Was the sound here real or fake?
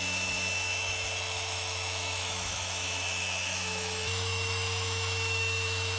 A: fake